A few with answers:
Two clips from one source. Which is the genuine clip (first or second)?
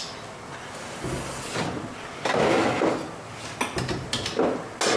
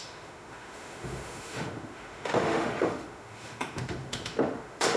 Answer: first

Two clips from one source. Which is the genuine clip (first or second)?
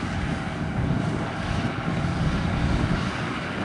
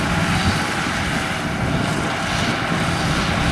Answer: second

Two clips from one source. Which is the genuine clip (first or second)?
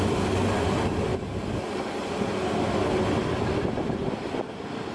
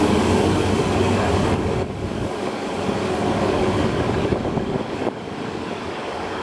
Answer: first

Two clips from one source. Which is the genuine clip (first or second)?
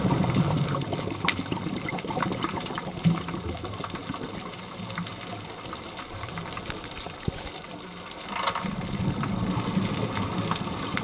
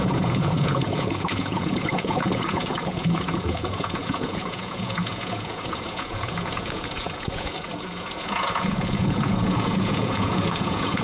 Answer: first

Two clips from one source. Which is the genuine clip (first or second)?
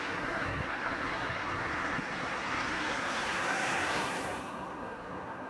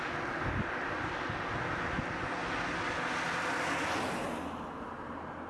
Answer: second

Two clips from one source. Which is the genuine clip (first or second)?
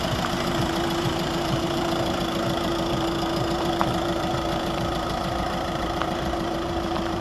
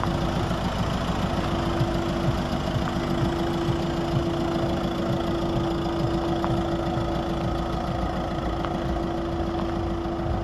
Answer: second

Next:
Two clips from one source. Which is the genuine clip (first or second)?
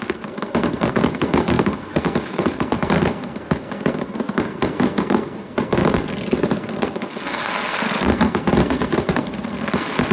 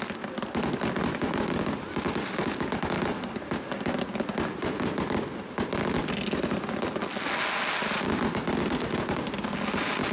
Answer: second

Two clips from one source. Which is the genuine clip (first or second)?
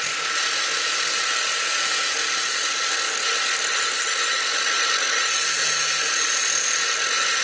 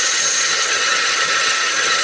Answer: first